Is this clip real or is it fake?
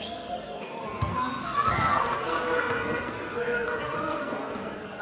fake